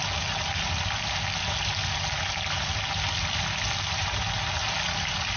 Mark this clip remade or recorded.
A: recorded